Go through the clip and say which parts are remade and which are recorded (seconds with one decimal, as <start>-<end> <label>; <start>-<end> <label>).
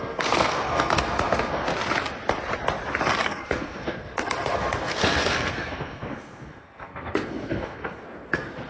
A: 0.0-1.7 remade; 1.7-3.2 recorded; 3.2-8.7 remade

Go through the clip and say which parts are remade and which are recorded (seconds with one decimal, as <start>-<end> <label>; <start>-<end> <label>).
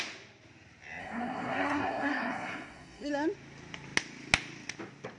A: 0.0-1.0 recorded; 1.0-3.1 remade; 3.1-5.2 recorded